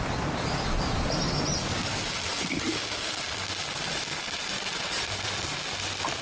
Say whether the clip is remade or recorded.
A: recorded